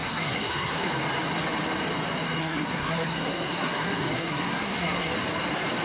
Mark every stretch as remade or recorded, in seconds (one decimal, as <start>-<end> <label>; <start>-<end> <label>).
0.0-0.9 remade; 0.9-2.4 recorded; 2.4-5.1 remade; 5.1-5.8 recorded